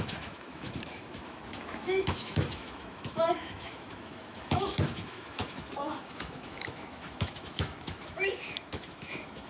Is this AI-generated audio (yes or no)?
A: yes